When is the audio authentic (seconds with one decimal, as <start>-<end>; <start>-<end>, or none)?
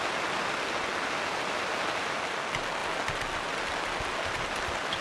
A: 0.0-5.0